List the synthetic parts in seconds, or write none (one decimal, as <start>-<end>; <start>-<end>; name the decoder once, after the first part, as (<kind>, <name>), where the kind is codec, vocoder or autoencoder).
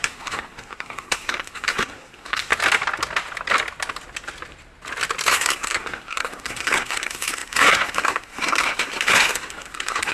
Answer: 0.0-2.5 (codec, SNAC); 5.3-10.1